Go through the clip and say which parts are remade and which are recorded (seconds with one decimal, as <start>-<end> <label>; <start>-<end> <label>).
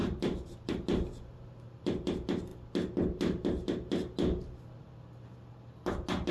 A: 0.0-0.7 remade; 0.7-6.3 recorded